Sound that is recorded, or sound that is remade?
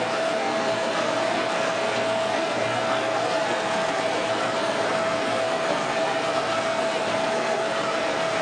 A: remade